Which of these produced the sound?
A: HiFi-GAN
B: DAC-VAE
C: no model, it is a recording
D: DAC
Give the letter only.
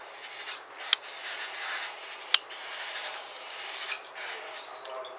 C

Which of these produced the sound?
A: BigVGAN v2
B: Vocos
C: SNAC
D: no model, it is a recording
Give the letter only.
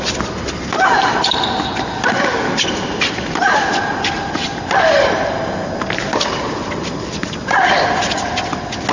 D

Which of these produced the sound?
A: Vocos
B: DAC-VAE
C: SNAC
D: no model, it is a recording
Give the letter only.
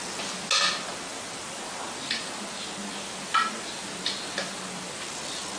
D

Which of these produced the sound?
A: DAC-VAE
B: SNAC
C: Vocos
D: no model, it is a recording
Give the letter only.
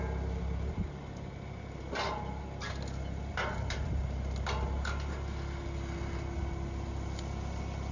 D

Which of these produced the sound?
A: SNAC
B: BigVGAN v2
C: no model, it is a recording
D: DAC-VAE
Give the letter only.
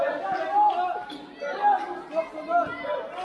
C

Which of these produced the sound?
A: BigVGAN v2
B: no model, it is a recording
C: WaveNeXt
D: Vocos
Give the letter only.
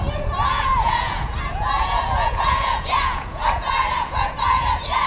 D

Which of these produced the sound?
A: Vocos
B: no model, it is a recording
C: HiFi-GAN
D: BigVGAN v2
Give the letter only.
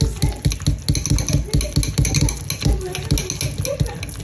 B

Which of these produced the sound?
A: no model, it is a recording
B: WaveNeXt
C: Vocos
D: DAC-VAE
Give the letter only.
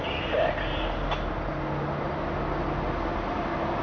A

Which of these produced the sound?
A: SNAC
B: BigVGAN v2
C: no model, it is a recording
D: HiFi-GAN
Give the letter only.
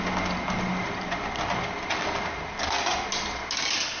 C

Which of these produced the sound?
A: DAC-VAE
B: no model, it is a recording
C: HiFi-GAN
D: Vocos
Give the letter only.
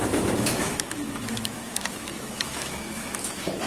A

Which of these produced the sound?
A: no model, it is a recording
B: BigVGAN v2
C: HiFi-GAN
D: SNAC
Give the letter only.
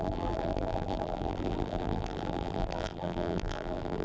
B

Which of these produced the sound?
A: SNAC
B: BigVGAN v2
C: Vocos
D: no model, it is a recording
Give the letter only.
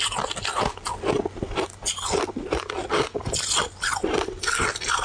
D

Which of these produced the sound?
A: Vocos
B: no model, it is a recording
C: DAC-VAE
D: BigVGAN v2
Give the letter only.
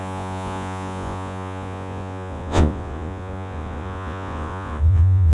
A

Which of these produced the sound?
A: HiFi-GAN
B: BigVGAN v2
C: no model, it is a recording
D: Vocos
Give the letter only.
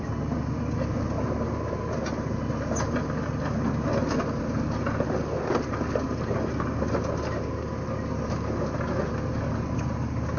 C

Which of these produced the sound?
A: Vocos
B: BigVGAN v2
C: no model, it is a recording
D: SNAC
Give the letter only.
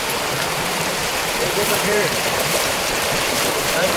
B